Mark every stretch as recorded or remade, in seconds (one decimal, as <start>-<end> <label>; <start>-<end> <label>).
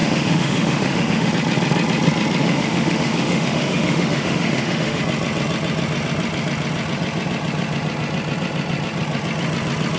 0.0-1.3 remade; 1.3-2.4 recorded; 2.4-5.0 remade; 5.0-10.0 recorded